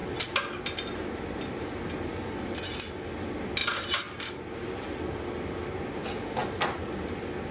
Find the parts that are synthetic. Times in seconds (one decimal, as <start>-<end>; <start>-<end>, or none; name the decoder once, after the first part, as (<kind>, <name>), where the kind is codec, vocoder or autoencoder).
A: none